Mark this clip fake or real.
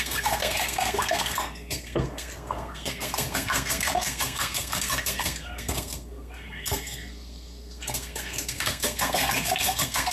fake